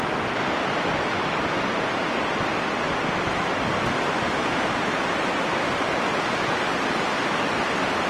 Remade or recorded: recorded